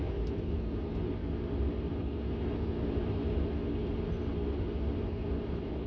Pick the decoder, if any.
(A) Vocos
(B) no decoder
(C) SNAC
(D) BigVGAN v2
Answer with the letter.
B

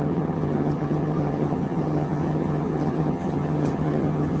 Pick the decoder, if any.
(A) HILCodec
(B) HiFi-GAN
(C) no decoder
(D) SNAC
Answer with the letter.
B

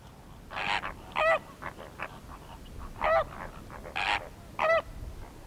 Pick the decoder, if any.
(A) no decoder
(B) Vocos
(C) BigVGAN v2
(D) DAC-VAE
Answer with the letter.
A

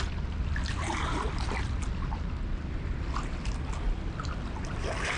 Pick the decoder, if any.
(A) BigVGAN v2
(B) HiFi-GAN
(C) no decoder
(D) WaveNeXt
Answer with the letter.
C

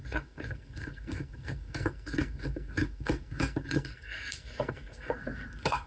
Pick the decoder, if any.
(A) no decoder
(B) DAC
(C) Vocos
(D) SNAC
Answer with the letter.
D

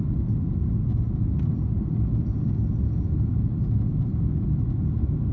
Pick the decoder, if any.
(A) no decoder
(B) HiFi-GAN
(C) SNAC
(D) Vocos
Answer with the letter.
A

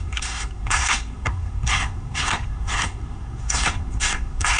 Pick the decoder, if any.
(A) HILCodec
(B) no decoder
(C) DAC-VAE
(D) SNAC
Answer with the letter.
D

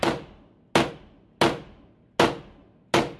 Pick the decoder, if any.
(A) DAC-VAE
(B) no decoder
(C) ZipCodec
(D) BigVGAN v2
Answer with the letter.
B